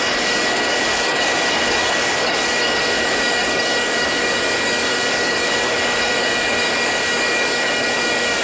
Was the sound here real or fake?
fake